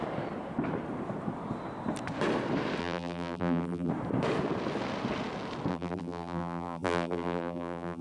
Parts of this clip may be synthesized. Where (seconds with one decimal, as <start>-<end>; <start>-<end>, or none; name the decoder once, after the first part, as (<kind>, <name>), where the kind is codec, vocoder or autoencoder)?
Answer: 2.8-3.9 (vocoder, BigVGAN v2); 5.7-8.0

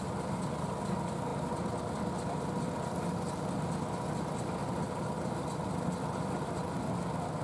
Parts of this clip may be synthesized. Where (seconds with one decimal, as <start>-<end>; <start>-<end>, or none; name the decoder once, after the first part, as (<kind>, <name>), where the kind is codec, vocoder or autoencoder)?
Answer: 4.6-6.4 (vocoder, BigVGAN v2)

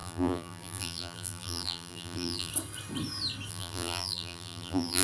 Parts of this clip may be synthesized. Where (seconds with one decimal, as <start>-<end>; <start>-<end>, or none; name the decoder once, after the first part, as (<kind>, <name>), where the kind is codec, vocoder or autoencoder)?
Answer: 0.0-2.5 (vocoder, BigVGAN v2); 3.5-5.0

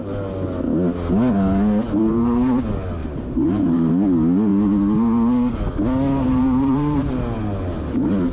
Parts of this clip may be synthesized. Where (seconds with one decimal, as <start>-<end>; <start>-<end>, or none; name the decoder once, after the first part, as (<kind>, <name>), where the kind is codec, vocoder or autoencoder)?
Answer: 2.0-2.6 (vocoder, BigVGAN v2); 3.0-3.9; 6.3-7.4